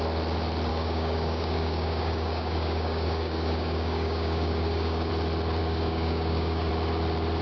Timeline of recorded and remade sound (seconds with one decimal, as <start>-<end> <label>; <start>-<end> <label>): 0.0-0.7 recorded; 0.7-5.1 remade; 5.1-5.6 recorded; 5.6-6.7 remade; 6.7-7.4 recorded